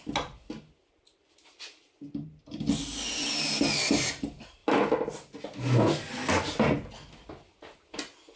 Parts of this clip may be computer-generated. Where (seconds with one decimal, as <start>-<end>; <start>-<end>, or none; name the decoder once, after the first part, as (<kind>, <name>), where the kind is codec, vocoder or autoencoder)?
none